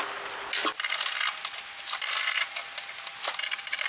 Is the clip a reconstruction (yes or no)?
no